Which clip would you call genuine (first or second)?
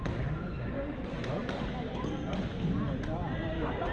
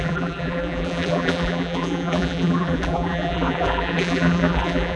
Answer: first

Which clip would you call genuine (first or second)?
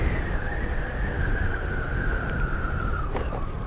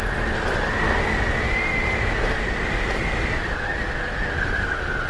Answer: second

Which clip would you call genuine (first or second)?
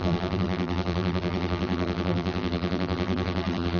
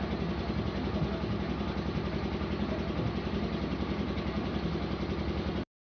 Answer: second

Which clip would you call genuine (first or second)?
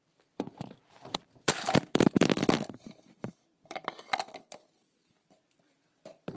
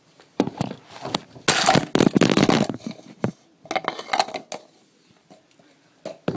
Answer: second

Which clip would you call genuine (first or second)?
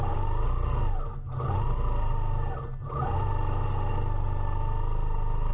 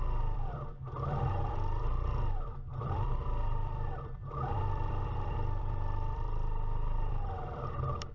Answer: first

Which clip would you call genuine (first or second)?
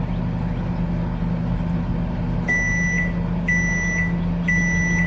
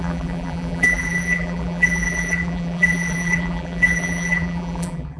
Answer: first